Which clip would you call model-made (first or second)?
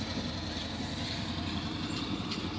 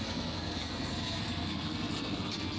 second